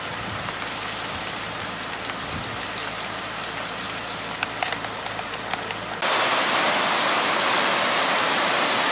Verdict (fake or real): real